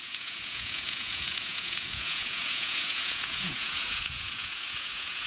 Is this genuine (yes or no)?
no